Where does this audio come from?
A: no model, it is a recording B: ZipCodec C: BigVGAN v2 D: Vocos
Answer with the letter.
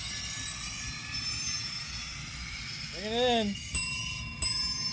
A